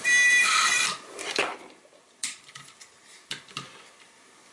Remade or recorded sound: remade